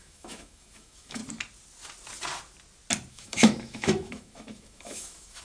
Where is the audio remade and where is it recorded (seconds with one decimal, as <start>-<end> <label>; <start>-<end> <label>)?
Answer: 0.0-1.2 remade; 1.2-3.1 recorded; 3.1-5.4 remade